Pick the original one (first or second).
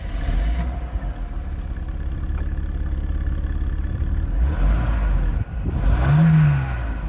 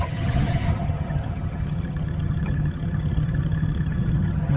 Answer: first